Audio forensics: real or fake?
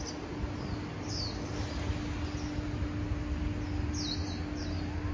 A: real